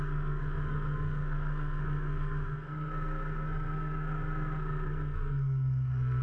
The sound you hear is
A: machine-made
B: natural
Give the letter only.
A